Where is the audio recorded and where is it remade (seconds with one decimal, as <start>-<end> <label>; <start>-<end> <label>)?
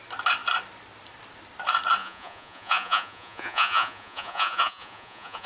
0.0-2.0 recorded; 2.0-5.5 remade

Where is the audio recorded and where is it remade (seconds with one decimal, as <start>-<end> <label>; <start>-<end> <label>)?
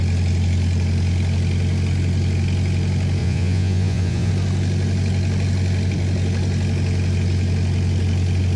0.0-3.2 recorded; 3.2-4.3 remade; 4.3-8.6 recorded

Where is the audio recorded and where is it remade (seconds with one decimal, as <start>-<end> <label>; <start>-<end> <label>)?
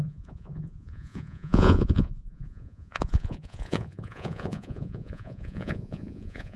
0.0-6.6 remade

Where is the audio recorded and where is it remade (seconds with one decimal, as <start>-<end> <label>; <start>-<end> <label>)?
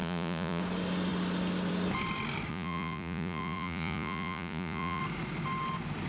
0.0-0.6 remade; 0.6-2.5 recorded; 2.5-5.0 remade; 5.0-6.1 recorded